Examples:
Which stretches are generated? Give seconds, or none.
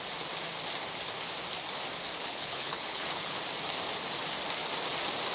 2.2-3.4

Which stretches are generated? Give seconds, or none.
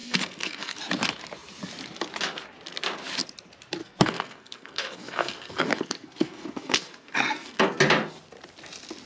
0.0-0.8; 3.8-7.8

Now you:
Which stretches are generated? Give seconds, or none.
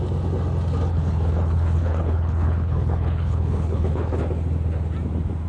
0.9-4.2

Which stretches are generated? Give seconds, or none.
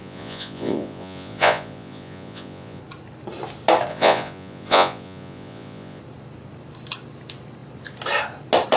0.0-2.8; 3.9-6.0